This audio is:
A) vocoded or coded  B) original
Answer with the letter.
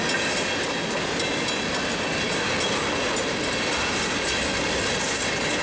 B